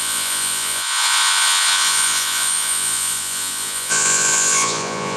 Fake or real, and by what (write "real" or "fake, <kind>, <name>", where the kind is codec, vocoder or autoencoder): fake, vocoder, Vocos